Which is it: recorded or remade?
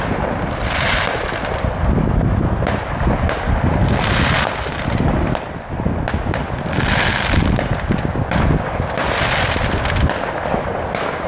recorded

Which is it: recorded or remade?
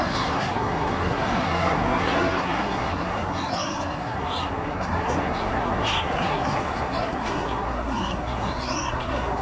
remade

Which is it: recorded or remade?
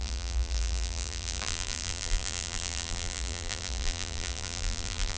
remade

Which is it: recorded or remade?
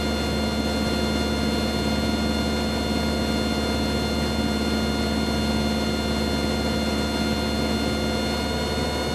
recorded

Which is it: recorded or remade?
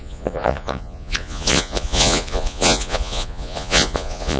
remade